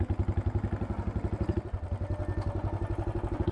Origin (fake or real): real